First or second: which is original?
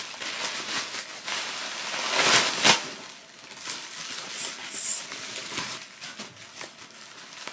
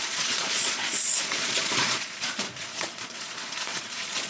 first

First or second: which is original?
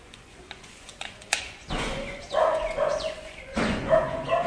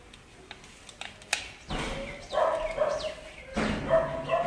second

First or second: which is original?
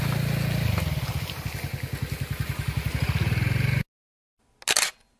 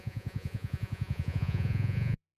first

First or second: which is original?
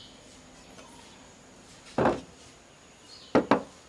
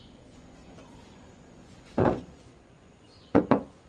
first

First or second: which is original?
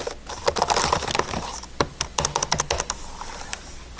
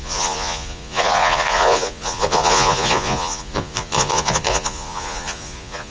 first